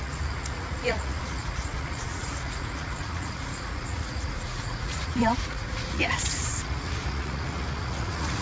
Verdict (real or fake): fake